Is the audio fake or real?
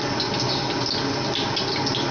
real